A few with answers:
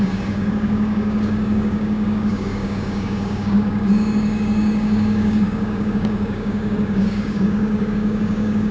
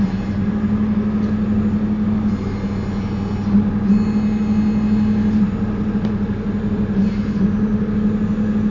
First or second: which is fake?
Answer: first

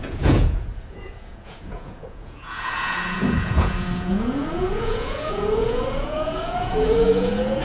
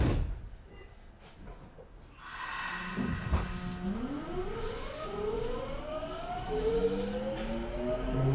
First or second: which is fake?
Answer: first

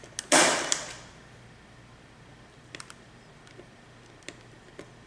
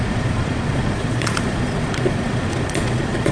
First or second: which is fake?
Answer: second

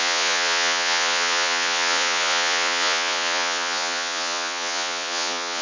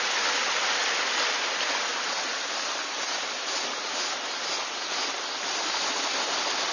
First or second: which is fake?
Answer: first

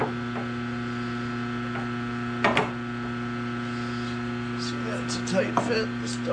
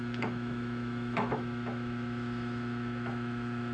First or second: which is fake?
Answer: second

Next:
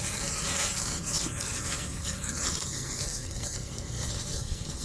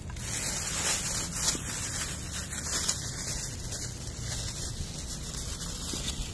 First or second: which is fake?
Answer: first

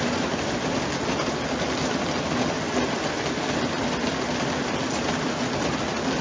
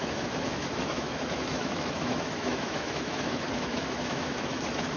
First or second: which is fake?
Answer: second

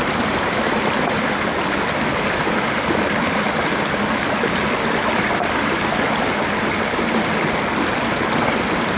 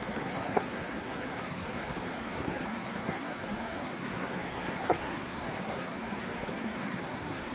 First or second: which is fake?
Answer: second